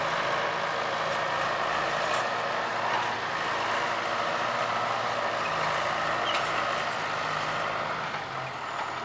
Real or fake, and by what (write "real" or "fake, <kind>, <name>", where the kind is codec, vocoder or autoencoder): real